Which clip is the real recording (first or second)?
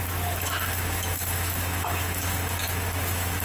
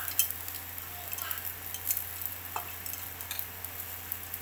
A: second